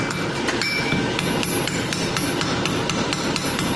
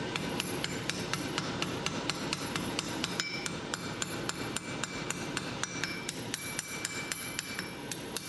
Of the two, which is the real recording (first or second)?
first